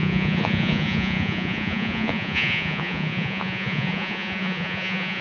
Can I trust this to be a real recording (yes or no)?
no